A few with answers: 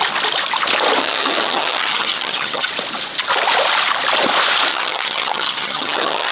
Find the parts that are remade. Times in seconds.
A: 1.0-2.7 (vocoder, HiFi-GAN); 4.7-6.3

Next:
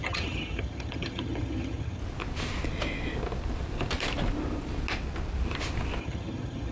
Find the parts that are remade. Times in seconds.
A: 0.0-2.0 (vocoder, HiFi-GAN); 6.0-6.7

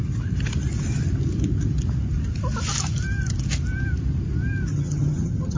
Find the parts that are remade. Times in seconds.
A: 4.7-5.6 (vocoder, HiFi-GAN)

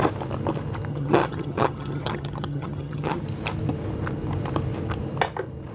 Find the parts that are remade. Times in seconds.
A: 0.9-3.2 (vocoder, HiFi-GAN)

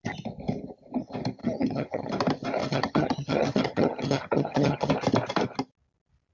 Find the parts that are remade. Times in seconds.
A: 1.4-2.1 (vocoder, HiFi-GAN); 2.6-4.9